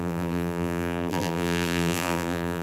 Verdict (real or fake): fake